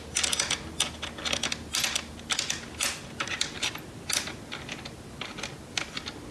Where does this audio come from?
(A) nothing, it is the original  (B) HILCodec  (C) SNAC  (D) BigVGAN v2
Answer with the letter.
A